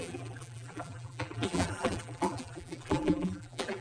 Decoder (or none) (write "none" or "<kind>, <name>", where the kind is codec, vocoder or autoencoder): vocoder, BigVGAN v2